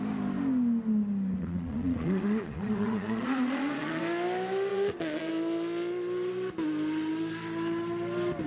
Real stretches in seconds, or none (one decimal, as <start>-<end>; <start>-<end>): 0.0-1.4; 4.0-4.7; 5.3-8.5